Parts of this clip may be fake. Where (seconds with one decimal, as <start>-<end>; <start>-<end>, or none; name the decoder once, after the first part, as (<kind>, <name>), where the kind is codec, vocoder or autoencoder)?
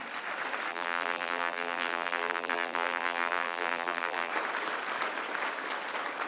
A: 0.7-4.3 (vocoder, BigVGAN v2)